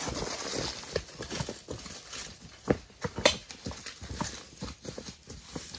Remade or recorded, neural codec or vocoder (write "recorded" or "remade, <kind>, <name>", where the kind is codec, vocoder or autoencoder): recorded